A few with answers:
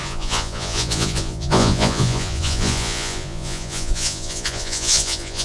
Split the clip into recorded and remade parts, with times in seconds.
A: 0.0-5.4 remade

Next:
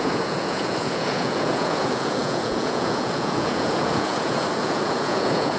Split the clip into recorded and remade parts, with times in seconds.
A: 0.0-5.6 remade

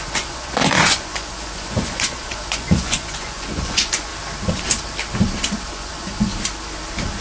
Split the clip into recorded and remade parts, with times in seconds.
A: 0.0-4.1 remade; 4.1-5.7 recorded; 5.7-6.3 remade; 6.3-7.2 recorded

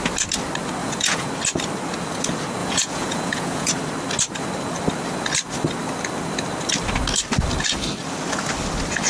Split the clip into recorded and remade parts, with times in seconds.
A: 0.0-0.8 recorded; 0.8-1.3 remade; 1.3-2.6 recorded; 2.6-3.7 remade; 3.7-9.1 recorded

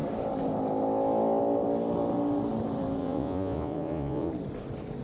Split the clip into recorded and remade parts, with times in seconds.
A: 0.0-3.0 recorded; 3.0-4.3 remade; 4.3-5.0 recorded